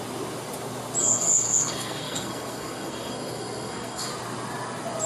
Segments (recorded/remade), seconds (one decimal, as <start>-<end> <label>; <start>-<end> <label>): 0.0-1.0 recorded; 1.0-4.1 remade; 4.1-5.1 recorded